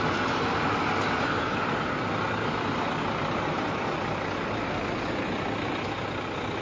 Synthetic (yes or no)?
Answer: no